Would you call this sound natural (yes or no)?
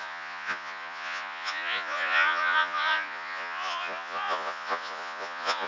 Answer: no